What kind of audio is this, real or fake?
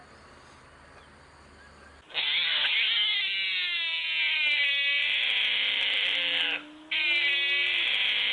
real